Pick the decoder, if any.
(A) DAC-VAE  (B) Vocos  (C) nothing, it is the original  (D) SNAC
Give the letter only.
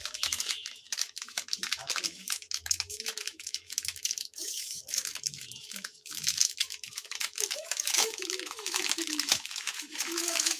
A